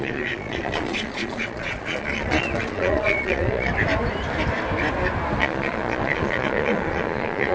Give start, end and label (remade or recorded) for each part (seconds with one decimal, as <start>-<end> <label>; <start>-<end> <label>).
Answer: 0.0-3.7 remade; 3.7-5.4 recorded; 5.4-7.5 remade